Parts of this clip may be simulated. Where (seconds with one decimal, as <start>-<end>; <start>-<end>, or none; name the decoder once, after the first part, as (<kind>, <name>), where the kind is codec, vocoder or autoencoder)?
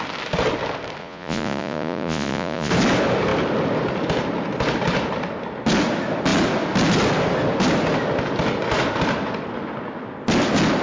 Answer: 1.0-2.7 (vocoder, Vocos)